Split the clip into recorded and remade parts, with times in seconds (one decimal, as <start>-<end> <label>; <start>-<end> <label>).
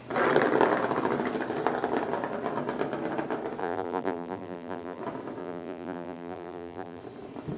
0.0-3.6 recorded; 3.6-5.0 remade; 5.0-5.4 recorded; 5.4-7.0 remade; 7.0-7.6 recorded